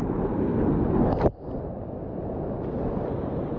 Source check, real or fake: real